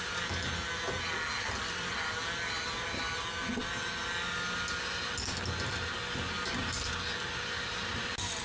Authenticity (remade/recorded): recorded